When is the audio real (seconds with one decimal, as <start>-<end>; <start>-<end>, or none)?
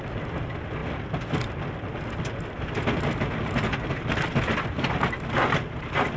0.0-6.2